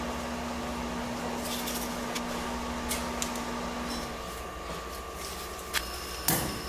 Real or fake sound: real